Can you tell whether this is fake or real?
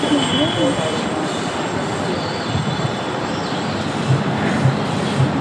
real